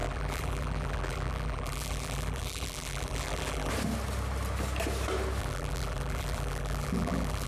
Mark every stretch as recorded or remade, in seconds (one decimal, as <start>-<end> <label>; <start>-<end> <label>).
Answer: 0.0-3.7 remade; 3.7-5.4 recorded; 5.4-7.5 remade